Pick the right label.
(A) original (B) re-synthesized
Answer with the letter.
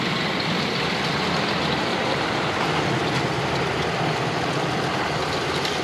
A